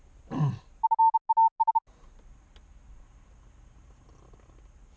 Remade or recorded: recorded